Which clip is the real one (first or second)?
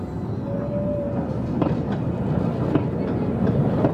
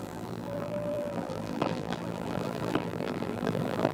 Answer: first